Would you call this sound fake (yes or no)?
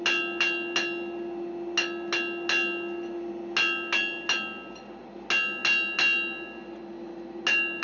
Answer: no